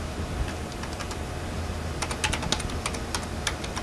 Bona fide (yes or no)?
yes